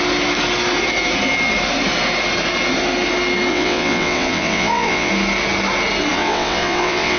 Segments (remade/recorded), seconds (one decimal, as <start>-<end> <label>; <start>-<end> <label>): 0.0-3.5 recorded; 3.5-5.1 remade; 5.1-6.1 recorded; 6.1-7.2 remade